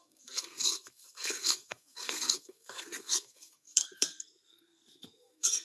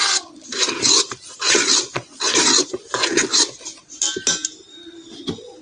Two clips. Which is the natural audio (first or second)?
second